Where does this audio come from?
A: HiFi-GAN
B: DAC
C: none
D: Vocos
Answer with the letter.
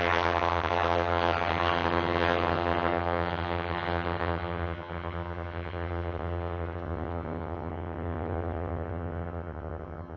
A